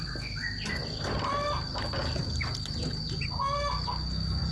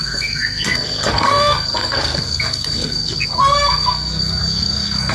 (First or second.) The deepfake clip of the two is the second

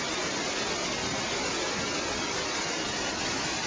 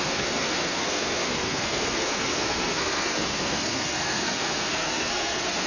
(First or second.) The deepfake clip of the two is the second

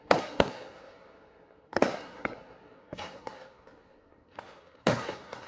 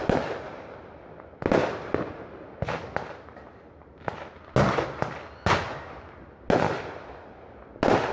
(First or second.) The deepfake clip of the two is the first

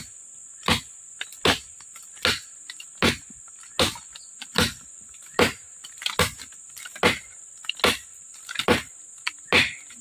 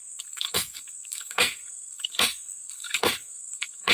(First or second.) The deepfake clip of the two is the second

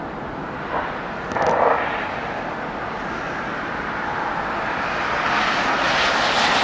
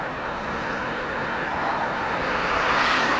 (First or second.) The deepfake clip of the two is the second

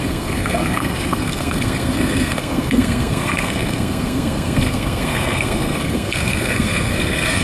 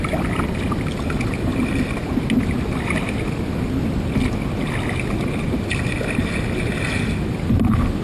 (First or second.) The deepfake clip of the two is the first